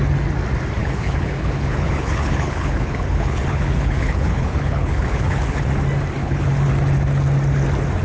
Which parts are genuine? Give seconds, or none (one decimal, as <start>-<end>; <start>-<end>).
0.0-0.8; 5.6-6.2; 6.7-8.0